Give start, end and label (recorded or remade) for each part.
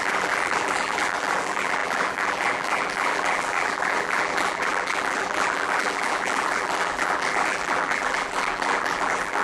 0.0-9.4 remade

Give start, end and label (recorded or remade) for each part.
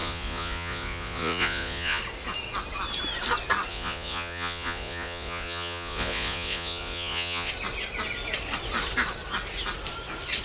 0.0-2.0 remade; 2.0-3.7 recorded; 3.7-7.5 remade; 7.5-10.4 recorded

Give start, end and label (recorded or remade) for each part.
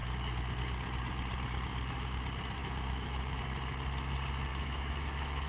0.0-2.6 recorded; 2.6-3.4 remade; 3.4-4.5 recorded; 4.5-5.5 remade